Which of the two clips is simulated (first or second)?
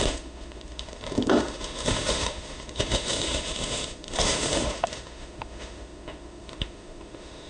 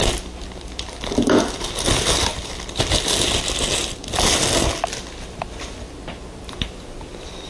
first